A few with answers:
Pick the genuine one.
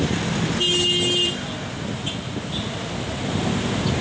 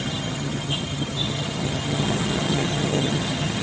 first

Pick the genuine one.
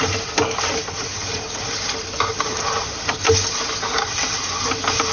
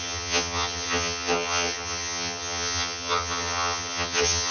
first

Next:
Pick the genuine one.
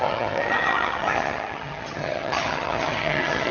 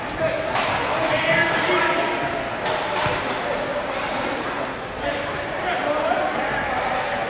second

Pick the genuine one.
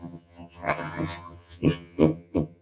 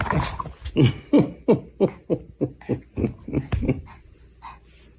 second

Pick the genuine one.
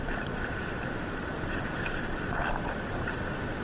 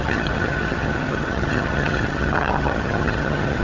first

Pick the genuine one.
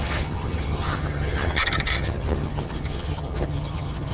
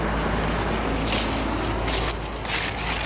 second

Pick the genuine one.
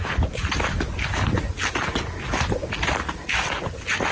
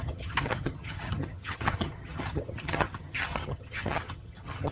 first